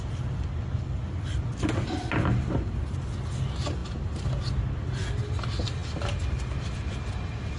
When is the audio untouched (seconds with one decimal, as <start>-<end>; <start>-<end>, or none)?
0.0-7.6